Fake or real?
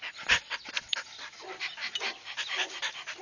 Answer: real